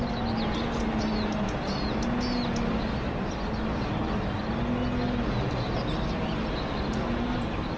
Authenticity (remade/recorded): recorded